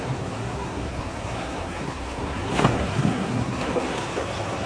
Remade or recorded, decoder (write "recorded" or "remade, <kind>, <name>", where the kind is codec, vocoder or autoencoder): remade, codec, SNAC